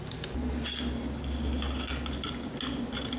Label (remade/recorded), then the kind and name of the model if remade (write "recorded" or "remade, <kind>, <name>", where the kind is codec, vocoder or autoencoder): recorded